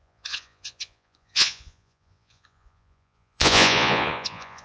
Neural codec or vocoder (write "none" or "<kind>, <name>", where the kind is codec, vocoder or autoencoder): vocoder, Vocos